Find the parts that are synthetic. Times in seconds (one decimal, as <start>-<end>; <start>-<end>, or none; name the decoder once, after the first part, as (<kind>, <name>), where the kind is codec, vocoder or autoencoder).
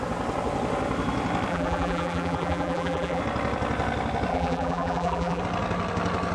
1.5-3.2 (vocoder, BigVGAN v2); 4.3-5.4